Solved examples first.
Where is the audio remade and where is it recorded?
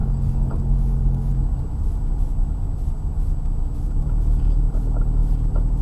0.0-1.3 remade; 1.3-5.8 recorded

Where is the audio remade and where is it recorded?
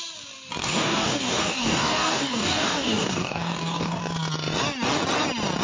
0.0-0.6 recorded; 0.6-4.0 remade; 4.0-5.6 recorded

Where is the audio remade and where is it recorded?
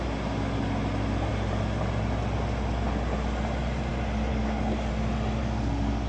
0.0-4.3 recorded; 4.3-4.9 remade; 4.9-5.4 recorded; 5.4-6.1 remade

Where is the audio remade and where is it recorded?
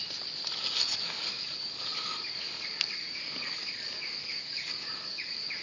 0.0-0.6 recorded; 0.6-5.6 remade